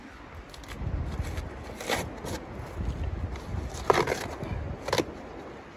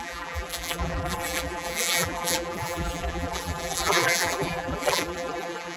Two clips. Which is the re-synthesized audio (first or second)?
second